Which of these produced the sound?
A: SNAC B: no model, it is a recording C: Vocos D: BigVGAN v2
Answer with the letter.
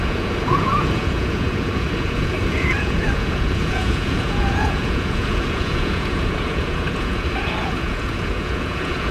C